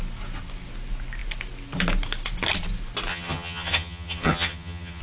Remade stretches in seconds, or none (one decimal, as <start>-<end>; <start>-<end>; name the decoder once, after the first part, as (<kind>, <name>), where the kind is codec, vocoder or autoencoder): 3.1-5.0 (vocoder, HiFi-GAN)